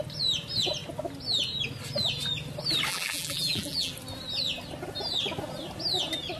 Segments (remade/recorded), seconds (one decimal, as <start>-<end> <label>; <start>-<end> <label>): 0.0-2.9 recorded; 2.9-3.9 remade; 3.9-6.4 recorded